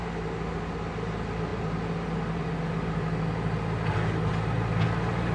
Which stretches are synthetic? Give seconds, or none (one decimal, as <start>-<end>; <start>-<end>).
none